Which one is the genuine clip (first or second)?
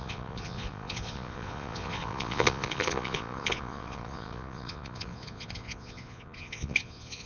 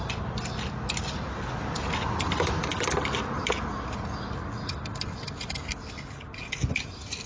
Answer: second